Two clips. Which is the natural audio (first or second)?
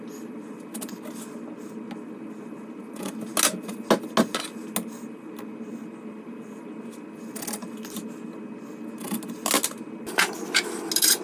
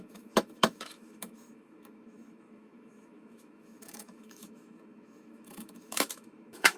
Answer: first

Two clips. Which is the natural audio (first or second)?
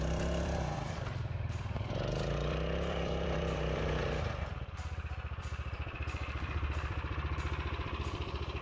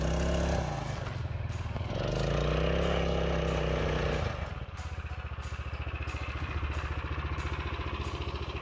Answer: second